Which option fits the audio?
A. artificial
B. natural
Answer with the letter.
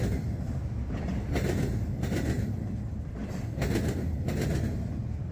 B